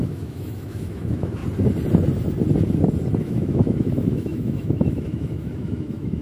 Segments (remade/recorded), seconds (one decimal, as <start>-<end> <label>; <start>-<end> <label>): 0.0-1.4 remade; 1.4-3.2 recorded; 3.2-6.2 remade